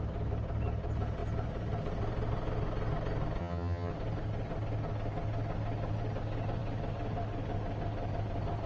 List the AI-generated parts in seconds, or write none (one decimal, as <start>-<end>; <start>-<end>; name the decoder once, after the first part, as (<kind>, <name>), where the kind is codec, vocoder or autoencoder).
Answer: 3.4-3.9 (vocoder, HiFi-GAN)